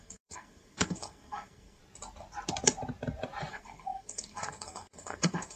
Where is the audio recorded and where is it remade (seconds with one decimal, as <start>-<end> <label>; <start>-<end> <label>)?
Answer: 0.0-1.8 remade; 1.8-3.5 recorded; 3.5-5.6 remade